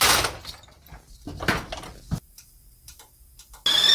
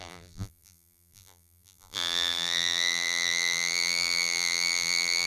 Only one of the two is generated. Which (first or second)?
second